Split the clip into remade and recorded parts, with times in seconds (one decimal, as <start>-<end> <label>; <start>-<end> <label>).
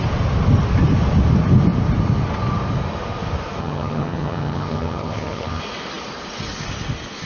0.0-3.6 recorded; 3.6-5.6 remade; 5.6-7.3 recorded